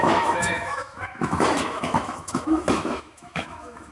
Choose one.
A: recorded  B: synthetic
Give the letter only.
B